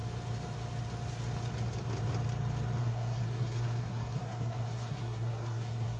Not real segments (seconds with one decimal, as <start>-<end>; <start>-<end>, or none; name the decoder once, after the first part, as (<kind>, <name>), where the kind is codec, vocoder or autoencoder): 2.8-6.0 (codec, SNAC)